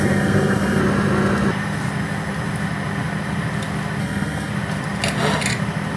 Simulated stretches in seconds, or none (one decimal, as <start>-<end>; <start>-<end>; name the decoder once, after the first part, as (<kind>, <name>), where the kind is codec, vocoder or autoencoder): 0.0-0.8 (codec, SNAC); 4.0-4.5